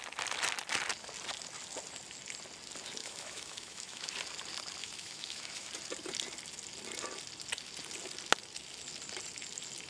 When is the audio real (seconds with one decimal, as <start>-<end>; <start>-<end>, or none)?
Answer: 0.0-3.0; 4.1-4.8; 5.7-9.9